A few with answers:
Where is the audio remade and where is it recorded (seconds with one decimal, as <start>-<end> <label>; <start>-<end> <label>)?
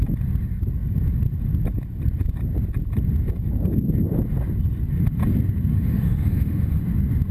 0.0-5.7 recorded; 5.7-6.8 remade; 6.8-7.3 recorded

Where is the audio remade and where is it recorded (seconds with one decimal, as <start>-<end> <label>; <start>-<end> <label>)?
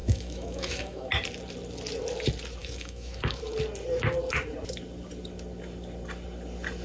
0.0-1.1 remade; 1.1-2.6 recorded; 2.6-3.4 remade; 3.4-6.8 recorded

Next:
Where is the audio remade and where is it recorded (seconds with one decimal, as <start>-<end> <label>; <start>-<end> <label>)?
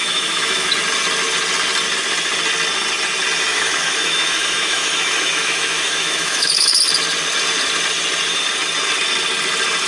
0.0-0.7 remade; 0.7-3.5 recorded; 3.5-6.8 remade; 6.8-9.9 recorded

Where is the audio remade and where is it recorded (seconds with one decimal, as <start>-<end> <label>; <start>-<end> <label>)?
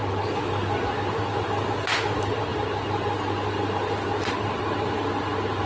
0.0-5.7 recorded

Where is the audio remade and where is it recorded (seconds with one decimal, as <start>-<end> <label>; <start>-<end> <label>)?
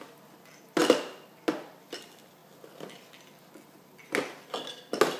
0.0-5.2 recorded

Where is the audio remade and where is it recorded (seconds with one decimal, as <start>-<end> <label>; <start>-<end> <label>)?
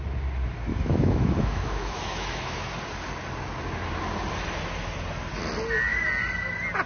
0.0-0.7 recorded; 0.7-2.7 remade; 2.7-6.9 recorded